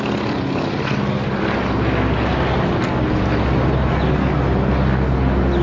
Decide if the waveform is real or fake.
real